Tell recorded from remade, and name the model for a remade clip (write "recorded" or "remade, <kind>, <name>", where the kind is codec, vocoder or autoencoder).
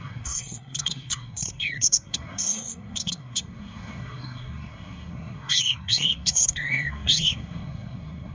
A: remade, codec, SNAC